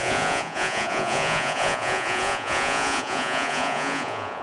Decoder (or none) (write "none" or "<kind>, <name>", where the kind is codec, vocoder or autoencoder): vocoder, Vocos